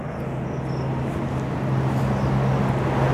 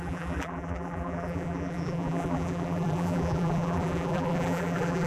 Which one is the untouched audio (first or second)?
first